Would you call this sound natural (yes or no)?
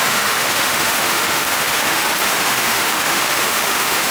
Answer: no